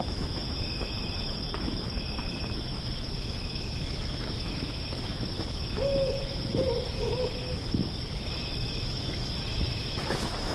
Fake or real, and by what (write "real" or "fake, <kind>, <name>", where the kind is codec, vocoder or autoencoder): fake, autoencoder, DAC-VAE